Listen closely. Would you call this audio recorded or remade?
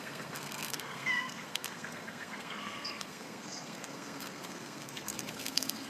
remade